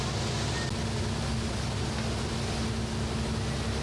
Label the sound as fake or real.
real